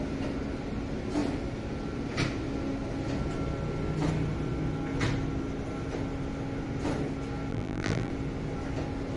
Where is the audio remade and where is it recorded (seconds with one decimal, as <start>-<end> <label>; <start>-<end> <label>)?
0.0-7.5 recorded; 7.5-8.1 remade; 8.1-9.2 recorded